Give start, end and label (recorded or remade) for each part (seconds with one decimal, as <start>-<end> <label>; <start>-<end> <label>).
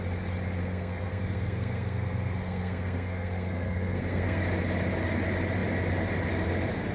0.0-0.6 recorded; 0.6-4.4 remade; 4.4-6.9 recorded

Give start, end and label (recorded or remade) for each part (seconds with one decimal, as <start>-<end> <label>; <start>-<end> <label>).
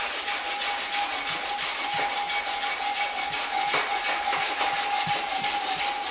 0.0-6.1 recorded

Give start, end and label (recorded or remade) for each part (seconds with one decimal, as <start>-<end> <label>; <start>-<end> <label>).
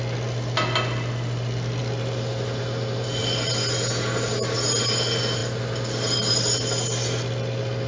0.0-7.9 recorded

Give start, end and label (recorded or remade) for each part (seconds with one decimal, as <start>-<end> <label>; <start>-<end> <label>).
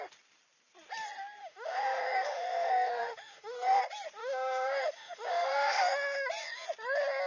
0.0-1.4 recorded; 1.4-3.8 remade; 3.8-4.2 recorded; 4.2-6.3 remade; 6.3-7.3 recorded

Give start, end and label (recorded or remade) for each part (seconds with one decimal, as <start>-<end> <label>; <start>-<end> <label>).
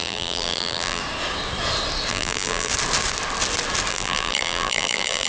0.0-1.0 remade; 1.0-2.1 recorded; 2.1-2.7 remade; 2.7-3.9 recorded; 3.9-5.3 remade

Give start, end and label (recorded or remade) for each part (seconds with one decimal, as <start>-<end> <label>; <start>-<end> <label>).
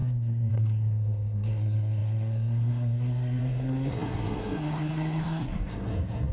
0.0-6.3 remade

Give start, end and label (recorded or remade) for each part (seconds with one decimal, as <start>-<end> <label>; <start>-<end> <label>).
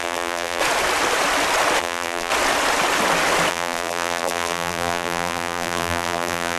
0.0-0.6 remade; 0.6-1.8 recorded; 1.8-2.3 remade; 2.3-3.5 recorded; 3.5-6.6 remade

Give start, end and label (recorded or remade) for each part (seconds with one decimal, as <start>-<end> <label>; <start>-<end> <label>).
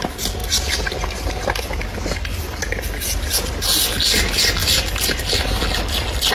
0.0-4.6 recorded; 4.6-5.6 remade; 5.6-6.3 recorded